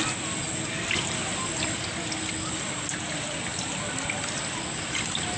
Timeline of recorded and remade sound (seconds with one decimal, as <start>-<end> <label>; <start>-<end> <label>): 0.0-5.4 recorded

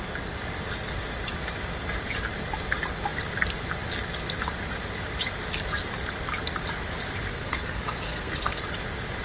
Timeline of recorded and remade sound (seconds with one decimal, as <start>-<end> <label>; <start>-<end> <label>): 0.0-7.3 recorded; 7.3-8.6 remade; 8.6-9.2 recorded